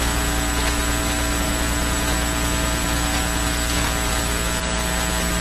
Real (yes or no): yes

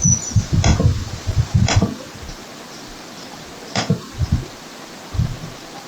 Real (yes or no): yes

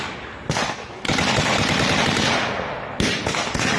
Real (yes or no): yes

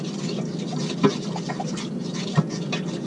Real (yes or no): yes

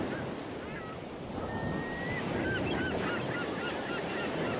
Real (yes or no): yes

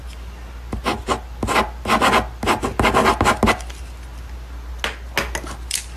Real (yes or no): yes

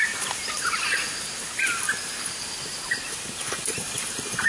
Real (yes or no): no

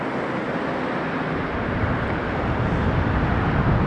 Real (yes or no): yes